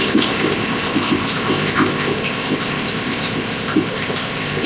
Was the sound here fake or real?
fake